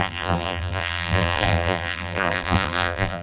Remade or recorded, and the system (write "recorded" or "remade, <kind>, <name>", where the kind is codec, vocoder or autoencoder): remade, vocoder, BigVGAN v2